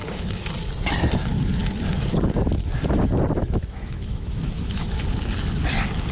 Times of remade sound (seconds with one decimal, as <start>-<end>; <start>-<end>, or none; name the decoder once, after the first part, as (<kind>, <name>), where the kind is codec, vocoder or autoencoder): 0.0-0.5 (autoencoder, DAC-VAE); 3.4-5.0